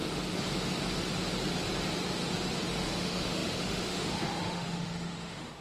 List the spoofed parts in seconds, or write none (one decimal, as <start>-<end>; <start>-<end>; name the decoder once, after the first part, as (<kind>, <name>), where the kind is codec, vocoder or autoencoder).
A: 2.7-5.6 (autoencoder, DAC-VAE)